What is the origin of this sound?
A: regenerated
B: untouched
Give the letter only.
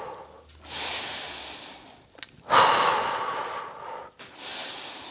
B